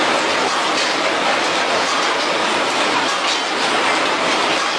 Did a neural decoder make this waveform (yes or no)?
no